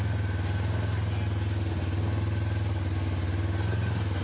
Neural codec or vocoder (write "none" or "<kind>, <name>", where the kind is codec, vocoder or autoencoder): none